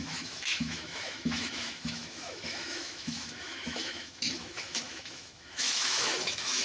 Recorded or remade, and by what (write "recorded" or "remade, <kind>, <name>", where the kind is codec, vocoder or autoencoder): remade, autoencoder, DAC-VAE